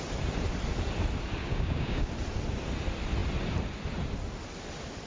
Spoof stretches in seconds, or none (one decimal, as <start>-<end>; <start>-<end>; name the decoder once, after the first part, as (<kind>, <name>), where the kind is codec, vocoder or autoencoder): 1.4-2.1 (codec, DAC)